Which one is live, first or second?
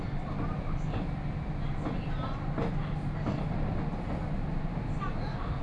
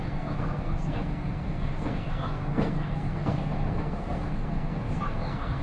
first